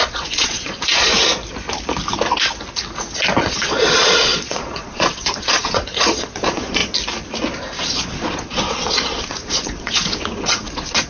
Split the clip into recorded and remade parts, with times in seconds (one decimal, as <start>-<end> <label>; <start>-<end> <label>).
0.0-1.1 remade; 1.1-3.4 recorded; 3.4-6.8 remade; 6.8-7.8 recorded; 7.8-11.1 remade